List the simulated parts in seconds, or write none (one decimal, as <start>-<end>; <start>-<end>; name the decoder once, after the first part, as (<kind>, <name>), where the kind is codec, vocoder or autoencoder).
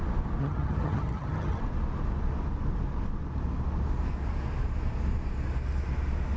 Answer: 0.4-1.6 (vocoder, HiFi-GAN)